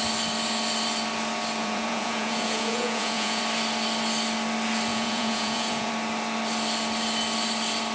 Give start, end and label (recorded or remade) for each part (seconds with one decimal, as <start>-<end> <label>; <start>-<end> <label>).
0.0-1.6 recorded; 1.6-3.4 remade; 3.4-4.9 recorded; 4.9-5.9 remade; 5.9-7.9 recorded